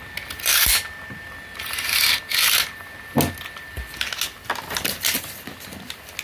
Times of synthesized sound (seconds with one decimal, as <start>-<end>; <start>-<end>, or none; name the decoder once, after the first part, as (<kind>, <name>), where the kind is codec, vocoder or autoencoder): none